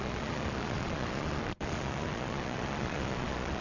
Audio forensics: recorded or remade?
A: remade